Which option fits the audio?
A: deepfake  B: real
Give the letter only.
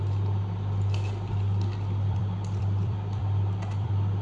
A